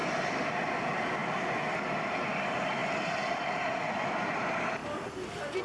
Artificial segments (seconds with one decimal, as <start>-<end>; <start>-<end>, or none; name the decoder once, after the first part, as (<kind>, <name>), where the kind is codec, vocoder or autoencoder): 2.8-4.3 (vocoder, BigVGAN v2)